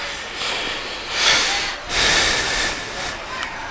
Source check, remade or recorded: recorded